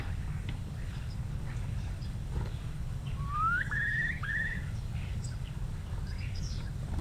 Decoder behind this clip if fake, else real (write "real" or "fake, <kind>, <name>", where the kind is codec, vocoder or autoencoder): fake, codec, DAC